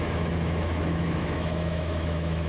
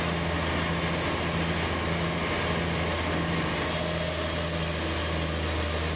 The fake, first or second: first